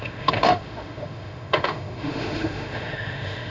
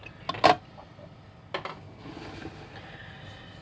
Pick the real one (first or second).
second